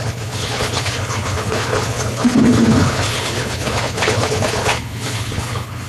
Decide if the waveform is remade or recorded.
remade